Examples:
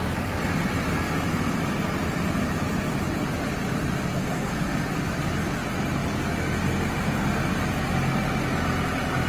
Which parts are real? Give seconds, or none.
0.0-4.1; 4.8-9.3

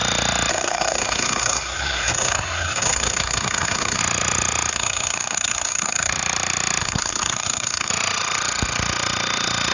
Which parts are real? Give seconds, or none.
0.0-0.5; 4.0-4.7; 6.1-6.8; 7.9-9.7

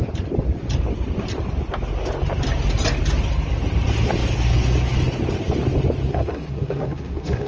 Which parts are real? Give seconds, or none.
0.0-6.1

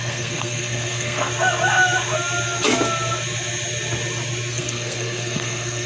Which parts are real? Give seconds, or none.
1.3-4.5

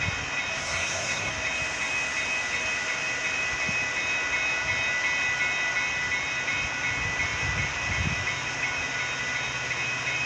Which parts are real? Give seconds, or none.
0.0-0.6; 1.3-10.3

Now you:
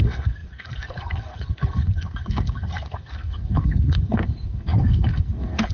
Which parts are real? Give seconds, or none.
none

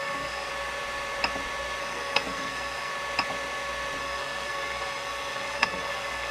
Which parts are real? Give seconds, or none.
0.5-1.8; 2.9-4.0

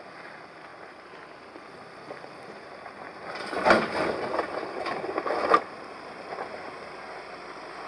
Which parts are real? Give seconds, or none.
0.0-7.9